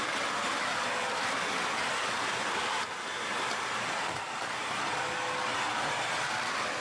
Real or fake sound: real